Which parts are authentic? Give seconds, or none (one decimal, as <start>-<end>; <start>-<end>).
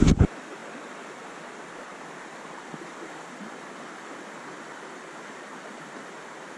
0.0-6.6